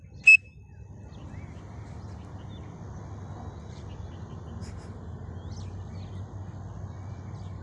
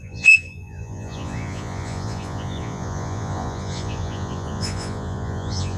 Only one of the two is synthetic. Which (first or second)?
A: second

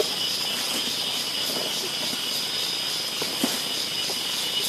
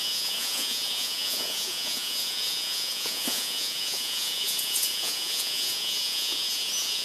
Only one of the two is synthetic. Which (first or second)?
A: second